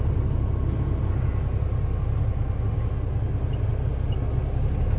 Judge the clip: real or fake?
real